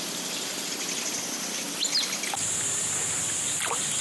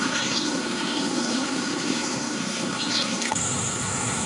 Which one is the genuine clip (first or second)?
first